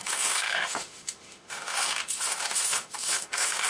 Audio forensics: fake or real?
fake